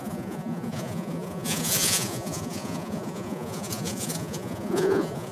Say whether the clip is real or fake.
fake